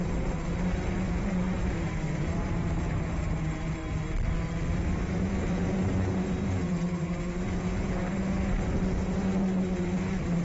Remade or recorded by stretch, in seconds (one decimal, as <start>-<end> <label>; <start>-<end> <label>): 0.0-3.8 remade; 3.8-4.7 recorded; 4.7-10.4 remade

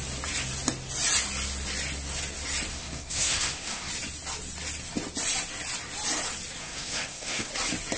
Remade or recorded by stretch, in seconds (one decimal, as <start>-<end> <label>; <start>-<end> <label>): 0.0-2.7 recorded; 2.7-3.9 remade; 3.9-6.6 recorded; 6.6-7.5 remade; 7.5-8.0 recorded

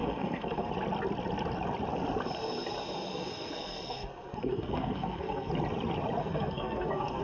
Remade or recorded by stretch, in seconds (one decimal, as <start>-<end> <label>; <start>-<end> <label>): 0.0-0.7 remade; 0.7-3.1 recorded; 3.1-5.5 remade; 5.5-6.2 recorded; 6.2-7.2 remade